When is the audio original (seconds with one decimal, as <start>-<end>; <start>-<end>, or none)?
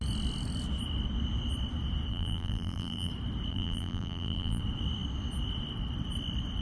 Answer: 0.0-2.1; 3.1-3.5; 4.6-6.6